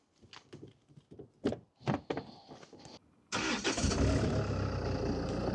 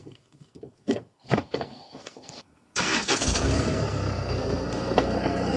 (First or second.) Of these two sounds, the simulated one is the second